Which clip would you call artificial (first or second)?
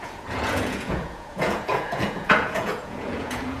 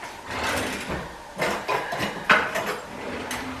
first